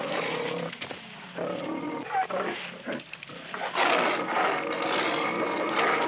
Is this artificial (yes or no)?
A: no